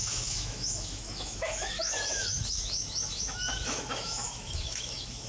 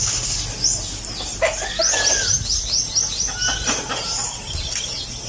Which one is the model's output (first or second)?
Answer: first